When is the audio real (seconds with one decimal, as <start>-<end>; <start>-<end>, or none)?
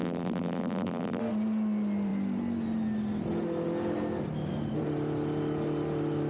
1.2-6.3